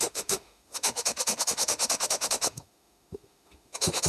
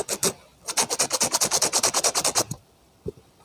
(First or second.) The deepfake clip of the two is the first